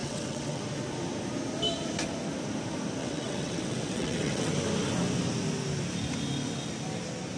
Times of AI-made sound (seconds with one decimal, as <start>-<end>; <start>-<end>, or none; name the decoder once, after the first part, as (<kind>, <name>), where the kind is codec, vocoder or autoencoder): 0.0-0.6 (vocoder, WaveNeXt); 3.0-4.5

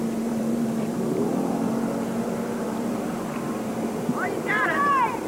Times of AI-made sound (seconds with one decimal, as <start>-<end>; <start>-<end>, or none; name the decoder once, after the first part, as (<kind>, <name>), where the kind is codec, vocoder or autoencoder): 0.0-5.3 (vocoder, BigVGAN v2)

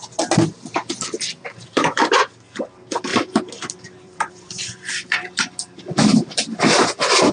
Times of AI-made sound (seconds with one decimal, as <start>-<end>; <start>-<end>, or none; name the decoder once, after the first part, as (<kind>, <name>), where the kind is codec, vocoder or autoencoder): 0.8-2.1 (vocoder, BigVGAN v2); 3.1-4.9

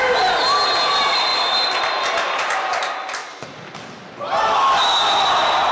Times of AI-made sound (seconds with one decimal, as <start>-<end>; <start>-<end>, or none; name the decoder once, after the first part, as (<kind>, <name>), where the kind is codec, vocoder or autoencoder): none

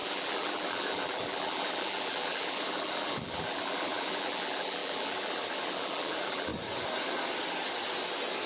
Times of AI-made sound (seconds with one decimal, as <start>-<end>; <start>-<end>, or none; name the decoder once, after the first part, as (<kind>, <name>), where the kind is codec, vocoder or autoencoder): 0.0-6.5 (vocoder, BigVGAN v2)

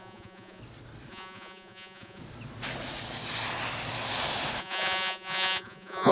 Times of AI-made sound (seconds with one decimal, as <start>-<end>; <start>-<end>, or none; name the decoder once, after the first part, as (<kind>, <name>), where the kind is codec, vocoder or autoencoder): 0.0-0.6 (vocoder, Vocos); 1.1-2.2; 4.6-6.1

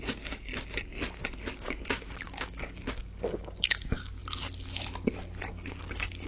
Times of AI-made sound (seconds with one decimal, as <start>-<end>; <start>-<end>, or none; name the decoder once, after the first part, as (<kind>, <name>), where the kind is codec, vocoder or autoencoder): 0.0-0.5 (codec, DAC); 1.5-4.2; 5.5-6.3

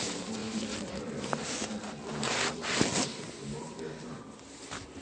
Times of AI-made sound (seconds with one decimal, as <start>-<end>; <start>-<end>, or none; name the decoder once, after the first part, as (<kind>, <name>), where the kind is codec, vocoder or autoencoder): none